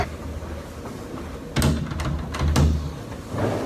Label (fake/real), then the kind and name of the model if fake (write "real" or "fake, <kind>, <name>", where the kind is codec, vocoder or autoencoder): real